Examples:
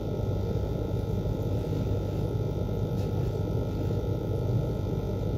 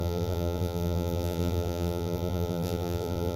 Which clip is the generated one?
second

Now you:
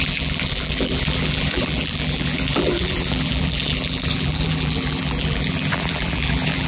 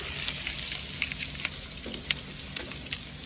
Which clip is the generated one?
first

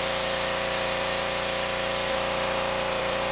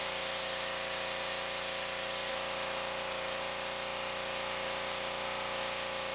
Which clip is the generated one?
first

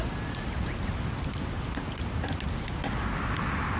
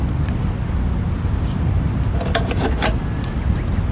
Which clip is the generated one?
second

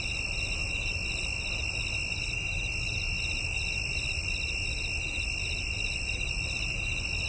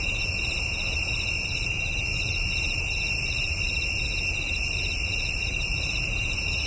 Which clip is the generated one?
second